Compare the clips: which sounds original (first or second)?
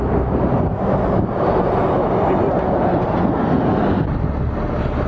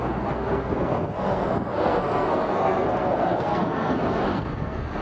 first